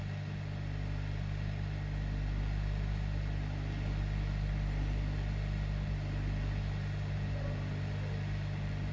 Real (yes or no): yes